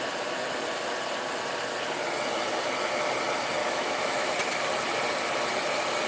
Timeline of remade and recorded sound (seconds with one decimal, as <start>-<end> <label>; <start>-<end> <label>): 0.0-3.6 recorded; 3.6-4.3 remade; 4.3-6.1 recorded